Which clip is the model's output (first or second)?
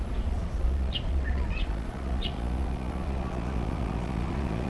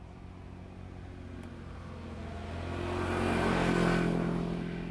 first